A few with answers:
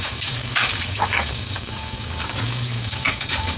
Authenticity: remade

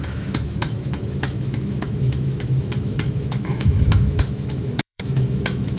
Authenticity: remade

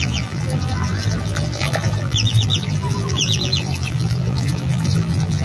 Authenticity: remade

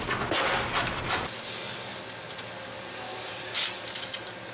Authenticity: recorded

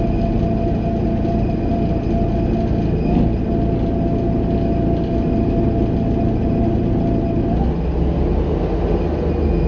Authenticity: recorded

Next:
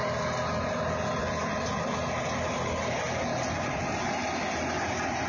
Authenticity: recorded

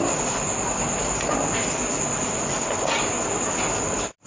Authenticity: recorded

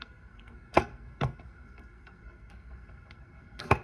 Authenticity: remade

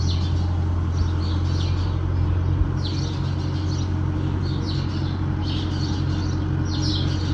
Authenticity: recorded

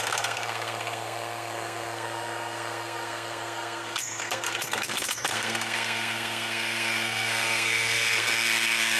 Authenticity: remade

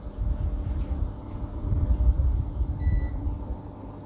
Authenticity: recorded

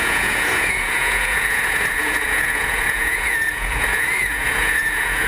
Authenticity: remade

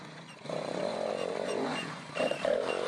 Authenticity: remade